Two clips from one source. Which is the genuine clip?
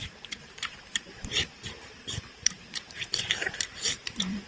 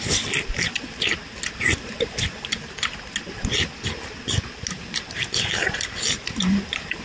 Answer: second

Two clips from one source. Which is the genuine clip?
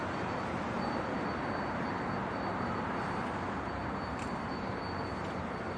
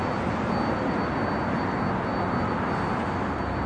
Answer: second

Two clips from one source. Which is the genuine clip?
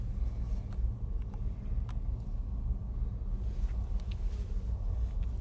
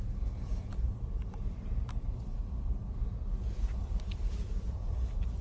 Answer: first